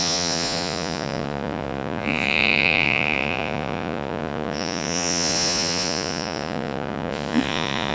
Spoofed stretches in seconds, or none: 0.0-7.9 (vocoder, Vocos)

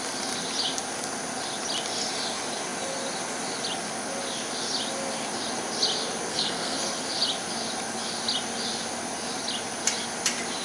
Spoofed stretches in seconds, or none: 6.3-6.9 (codec, SNAC)

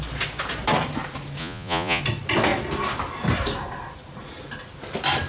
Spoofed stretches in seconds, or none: 1.4-2.0 (vocoder, Vocos)

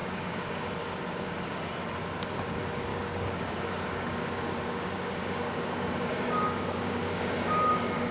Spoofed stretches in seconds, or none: 0.0-1.6 (codec, DAC); 2.9-8.1

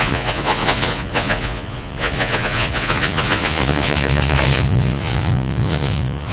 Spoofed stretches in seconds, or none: 0.0-6.3 (vocoder, Vocos)

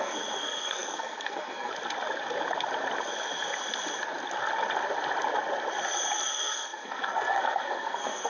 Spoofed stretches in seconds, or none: 0.0-1.7 (codec, SNAC); 6.3-8.3

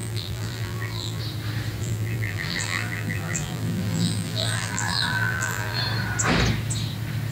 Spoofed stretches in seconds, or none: 0.0-1.2 (vocoder, BigVGAN v2); 1.8-5.8

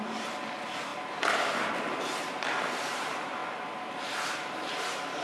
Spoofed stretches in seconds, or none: none